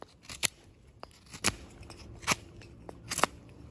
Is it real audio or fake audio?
real